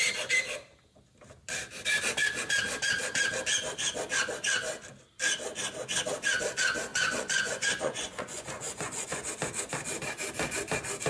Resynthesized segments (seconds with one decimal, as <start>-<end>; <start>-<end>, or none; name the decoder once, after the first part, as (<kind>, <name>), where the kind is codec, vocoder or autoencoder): 6.9-9.3 (vocoder, Vocos)

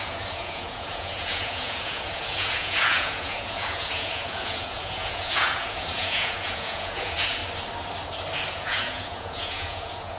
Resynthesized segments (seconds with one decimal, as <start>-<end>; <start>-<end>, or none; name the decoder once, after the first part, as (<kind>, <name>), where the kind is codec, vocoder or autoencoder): 0.0-7.4 (vocoder, Vocos); 8.5-10.2

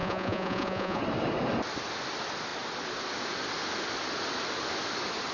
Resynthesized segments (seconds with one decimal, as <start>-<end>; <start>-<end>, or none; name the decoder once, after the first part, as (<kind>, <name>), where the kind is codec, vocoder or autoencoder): 0.0-1.0 (vocoder, Vocos)